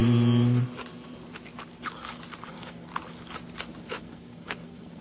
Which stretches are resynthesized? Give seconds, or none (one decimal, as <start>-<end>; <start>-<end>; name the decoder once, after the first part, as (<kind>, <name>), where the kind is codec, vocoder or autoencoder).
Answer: 2.5-2.9 (codec, SNAC); 4.0-5.0